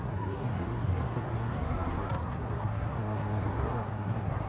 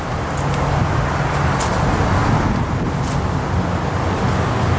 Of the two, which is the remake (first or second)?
first